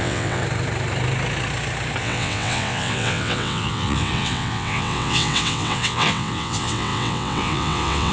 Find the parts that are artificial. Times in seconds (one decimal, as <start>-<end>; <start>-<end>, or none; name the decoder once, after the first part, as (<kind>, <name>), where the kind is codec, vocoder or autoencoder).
0.0-0.4 (vocoder, WaveNeXt); 2.0-8.1